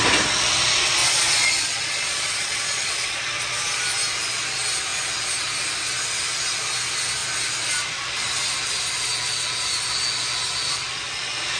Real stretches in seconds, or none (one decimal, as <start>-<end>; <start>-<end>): 0.0-1.0; 3.2-11.6